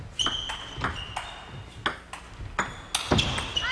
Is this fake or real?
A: real